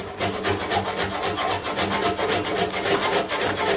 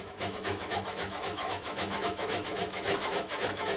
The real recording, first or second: first